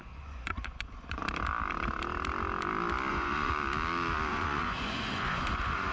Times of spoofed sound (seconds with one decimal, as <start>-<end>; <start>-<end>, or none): 0.0-1.2; 3.1-3.5; 4.3-5.9